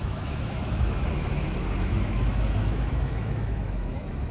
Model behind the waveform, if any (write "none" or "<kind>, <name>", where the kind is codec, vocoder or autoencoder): autoencoder, DAC-VAE